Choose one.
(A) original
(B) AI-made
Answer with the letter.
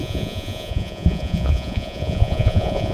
B